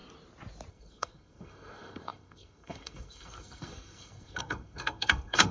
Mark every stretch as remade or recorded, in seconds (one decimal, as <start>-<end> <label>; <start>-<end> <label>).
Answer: 0.0-0.7 recorded; 0.7-5.5 remade